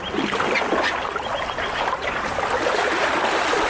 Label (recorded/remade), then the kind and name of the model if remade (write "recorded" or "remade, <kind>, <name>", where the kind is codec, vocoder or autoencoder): recorded